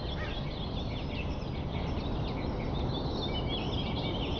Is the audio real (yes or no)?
yes